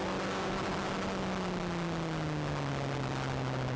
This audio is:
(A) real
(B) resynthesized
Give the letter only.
A